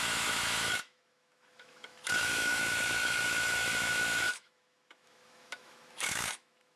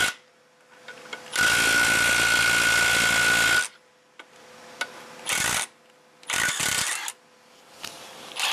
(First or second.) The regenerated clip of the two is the first